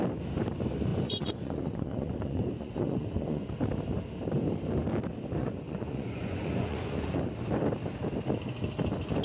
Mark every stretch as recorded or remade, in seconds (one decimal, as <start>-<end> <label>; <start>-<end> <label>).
0.0-0.9 recorded; 0.9-3.5 remade; 3.5-5.4 recorded; 5.4-7.2 remade; 7.2-9.2 recorded